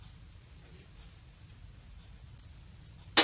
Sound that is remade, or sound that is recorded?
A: recorded